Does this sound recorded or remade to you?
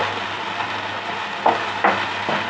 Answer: recorded